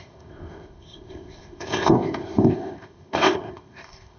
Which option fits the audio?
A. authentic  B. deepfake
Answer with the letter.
B